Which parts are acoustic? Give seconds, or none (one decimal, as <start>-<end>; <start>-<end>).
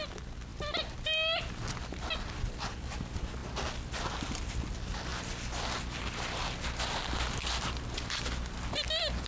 0.0-9.3